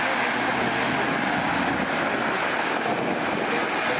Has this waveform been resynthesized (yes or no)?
no